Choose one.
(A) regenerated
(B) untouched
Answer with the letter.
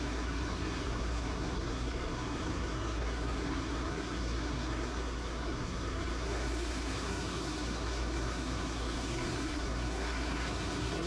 A